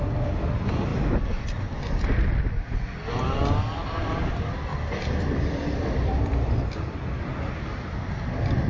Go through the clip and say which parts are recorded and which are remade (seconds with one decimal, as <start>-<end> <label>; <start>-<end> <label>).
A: 0.0-4.7 recorded; 4.7-8.7 remade